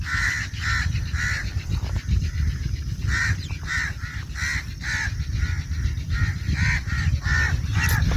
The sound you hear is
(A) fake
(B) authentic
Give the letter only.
B